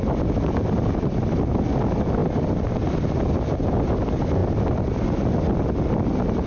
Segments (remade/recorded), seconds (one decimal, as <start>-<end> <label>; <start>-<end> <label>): 0.0-6.5 recorded